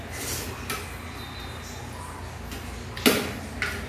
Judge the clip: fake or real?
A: real